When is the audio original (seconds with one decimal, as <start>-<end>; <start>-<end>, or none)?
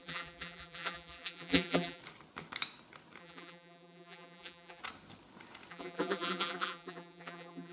2.0-3.2; 4.8-5.7